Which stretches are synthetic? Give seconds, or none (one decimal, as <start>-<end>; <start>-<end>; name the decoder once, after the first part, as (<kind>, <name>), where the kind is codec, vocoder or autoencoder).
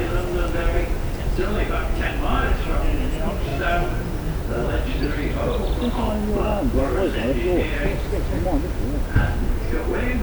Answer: none